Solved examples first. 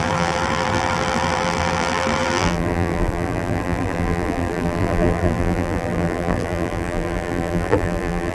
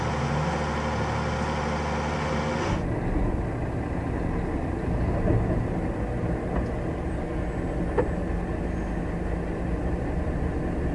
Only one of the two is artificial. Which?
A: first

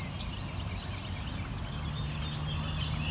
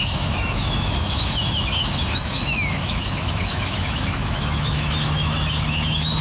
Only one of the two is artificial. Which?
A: second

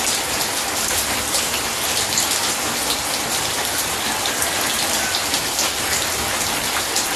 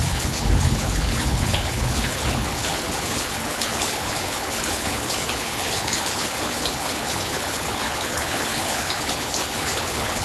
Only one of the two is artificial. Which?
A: second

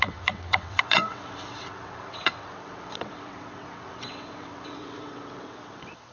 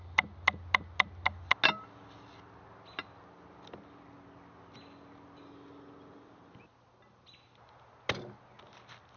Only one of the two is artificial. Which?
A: first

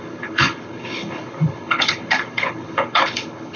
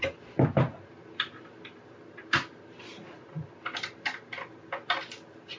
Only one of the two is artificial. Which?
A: first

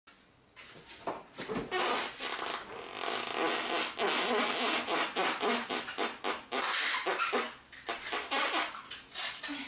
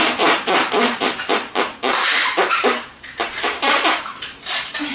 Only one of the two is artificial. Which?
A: second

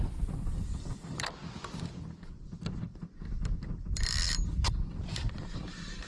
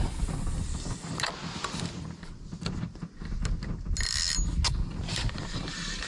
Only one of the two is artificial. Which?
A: first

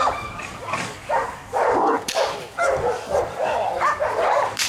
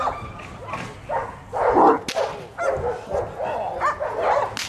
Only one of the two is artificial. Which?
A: first